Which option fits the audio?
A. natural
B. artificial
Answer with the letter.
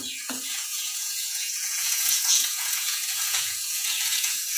B